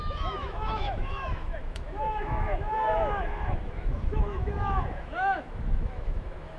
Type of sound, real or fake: fake